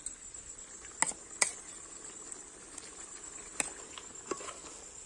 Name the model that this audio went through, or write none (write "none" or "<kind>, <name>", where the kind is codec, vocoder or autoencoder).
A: none